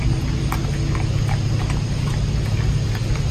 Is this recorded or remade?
recorded